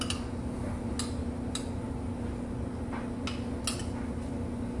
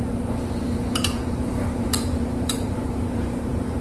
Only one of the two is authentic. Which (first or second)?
first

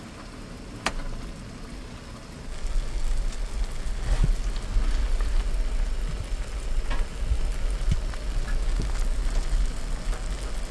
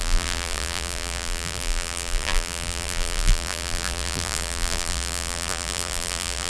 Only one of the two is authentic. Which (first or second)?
first